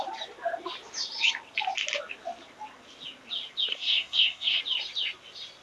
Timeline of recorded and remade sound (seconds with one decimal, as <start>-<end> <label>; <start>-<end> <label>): 0.0-3.7 recorded; 3.7-4.6 remade; 4.6-5.6 recorded